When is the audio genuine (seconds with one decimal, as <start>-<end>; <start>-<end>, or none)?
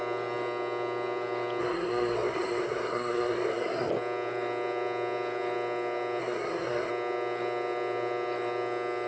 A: 0.0-1.6; 3.9-6.2; 6.9-9.1